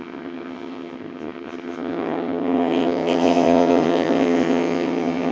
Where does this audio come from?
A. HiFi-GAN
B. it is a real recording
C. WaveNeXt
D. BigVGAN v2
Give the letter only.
A